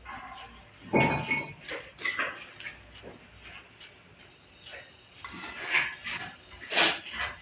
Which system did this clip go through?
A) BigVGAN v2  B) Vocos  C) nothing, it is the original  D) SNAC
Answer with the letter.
C